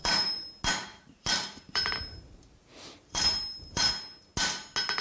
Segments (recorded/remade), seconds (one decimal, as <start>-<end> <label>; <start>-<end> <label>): 0.0-0.5 remade; 0.5-0.9 recorded; 0.9-3.9 remade; 3.9-5.0 recorded